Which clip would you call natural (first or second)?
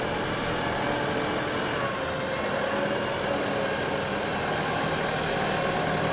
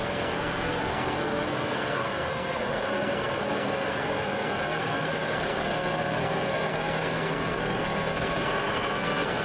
first